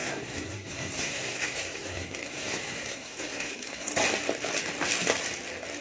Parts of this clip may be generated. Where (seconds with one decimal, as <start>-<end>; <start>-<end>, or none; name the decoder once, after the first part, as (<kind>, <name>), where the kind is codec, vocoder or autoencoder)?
0.0-3.9 (codec, SNAC)